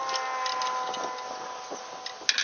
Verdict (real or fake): real